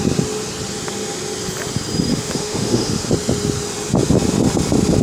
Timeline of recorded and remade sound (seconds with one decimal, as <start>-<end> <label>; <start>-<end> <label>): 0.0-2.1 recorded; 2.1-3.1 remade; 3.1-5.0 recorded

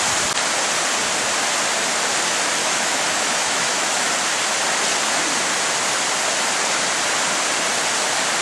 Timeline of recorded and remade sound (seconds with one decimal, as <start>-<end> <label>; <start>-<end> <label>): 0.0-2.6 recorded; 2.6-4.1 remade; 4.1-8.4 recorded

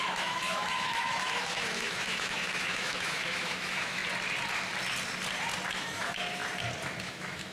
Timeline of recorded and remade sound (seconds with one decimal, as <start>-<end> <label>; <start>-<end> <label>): 0.0-4.0 remade; 4.0-5.7 recorded; 5.7-6.4 remade; 6.4-7.0 recorded; 7.0-7.5 remade